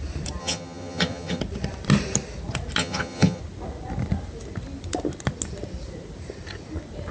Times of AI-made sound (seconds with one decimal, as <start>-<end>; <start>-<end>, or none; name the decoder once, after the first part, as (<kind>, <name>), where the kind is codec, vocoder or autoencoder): 0.4-1.4 (vocoder, HiFi-GAN); 2.8-3.4

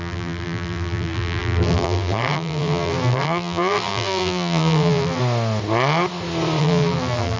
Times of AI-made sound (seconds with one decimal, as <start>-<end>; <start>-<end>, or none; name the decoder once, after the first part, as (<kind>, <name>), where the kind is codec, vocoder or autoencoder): 0.0-5.2 (vocoder, BigVGAN v2); 6.6-7.4

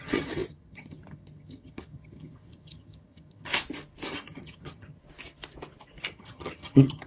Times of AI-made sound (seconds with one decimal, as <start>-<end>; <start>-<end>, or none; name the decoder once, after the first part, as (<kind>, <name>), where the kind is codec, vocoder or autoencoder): 0.0-3.5 (vocoder, HiFi-GAN); 4.1-5.0; 6.1-7.1

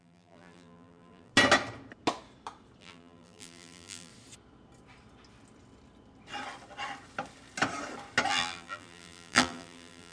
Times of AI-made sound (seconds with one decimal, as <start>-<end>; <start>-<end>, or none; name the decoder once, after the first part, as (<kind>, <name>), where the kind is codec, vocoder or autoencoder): 0.0-1.3 (vocoder, BigVGAN v2); 2.8-4.1; 8.3-10.1